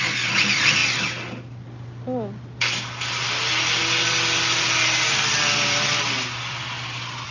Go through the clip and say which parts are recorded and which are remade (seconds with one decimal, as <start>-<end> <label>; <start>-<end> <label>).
0.0-0.8 remade; 0.8-5.1 recorded; 5.1-7.3 remade